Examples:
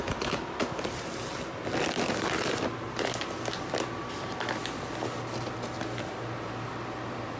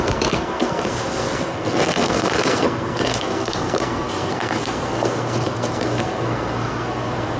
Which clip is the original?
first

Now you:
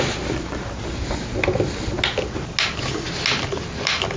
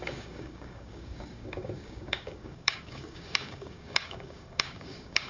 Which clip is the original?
first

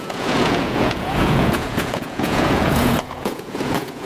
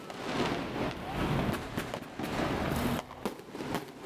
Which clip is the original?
second